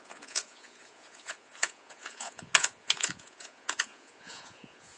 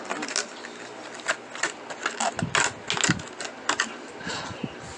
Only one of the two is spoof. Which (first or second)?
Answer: first